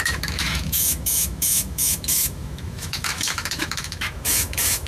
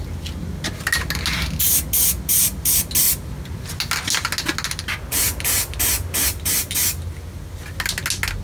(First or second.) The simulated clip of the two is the first